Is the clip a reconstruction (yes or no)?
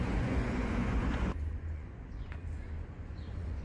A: yes